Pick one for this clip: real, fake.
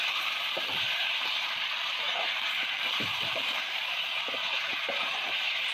fake